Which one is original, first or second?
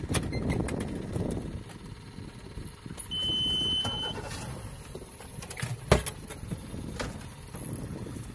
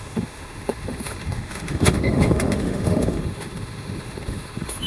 first